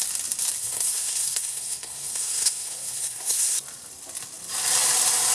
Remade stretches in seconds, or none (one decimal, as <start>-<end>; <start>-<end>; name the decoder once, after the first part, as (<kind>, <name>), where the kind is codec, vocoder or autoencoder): 0.6-3.6 (codec, SNAC)